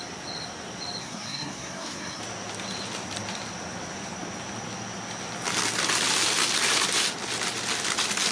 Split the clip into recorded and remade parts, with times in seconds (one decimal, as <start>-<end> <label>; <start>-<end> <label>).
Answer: 0.0-1.0 recorded; 1.0-2.2 remade; 2.2-8.3 recorded